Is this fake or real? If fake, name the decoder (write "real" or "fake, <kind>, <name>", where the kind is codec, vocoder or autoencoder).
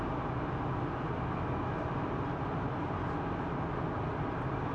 real